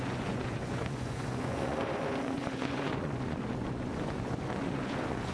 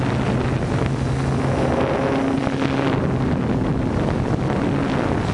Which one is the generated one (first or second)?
first